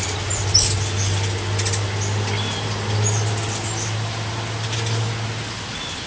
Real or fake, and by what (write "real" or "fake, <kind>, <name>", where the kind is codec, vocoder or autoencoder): real